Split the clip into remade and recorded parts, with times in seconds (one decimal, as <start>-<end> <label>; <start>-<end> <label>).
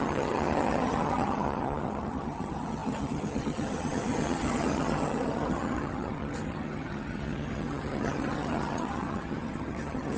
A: 0.0-10.2 remade